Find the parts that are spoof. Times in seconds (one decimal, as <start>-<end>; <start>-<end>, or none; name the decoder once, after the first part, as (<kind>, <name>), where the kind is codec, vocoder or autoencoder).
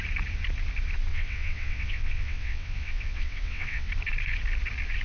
1.1-3.9 (vocoder, WaveNeXt)